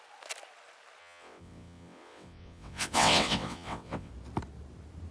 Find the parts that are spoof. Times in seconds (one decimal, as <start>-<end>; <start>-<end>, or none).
1.0-4.1